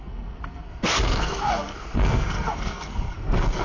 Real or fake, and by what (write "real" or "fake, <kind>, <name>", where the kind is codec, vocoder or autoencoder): fake, codec, SNAC